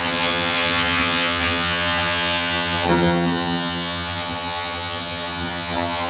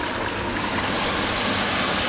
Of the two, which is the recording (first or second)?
second